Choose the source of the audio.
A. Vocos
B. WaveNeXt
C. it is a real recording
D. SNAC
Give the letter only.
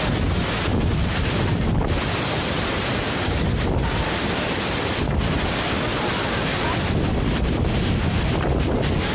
C